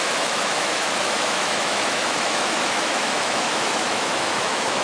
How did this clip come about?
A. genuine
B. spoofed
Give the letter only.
B